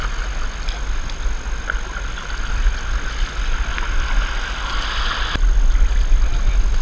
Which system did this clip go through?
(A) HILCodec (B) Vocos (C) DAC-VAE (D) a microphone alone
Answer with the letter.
D